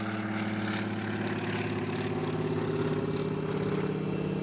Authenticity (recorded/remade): recorded